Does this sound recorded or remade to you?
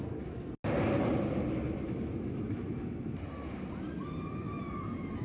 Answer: recorded